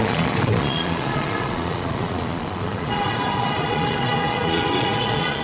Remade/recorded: remade